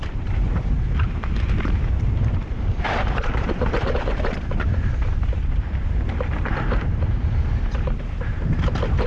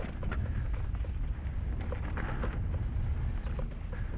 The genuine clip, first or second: second